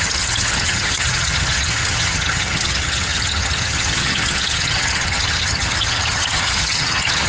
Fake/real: fake